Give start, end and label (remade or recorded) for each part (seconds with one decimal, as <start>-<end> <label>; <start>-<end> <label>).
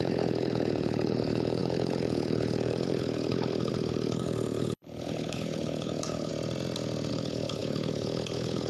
0.0-6.3 remade; 6.3-7.1 recorded; 7.1-8.7 remade